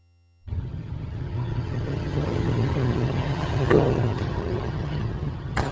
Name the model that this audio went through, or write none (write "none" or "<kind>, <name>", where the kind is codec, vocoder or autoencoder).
vocoder, HiFi-GAN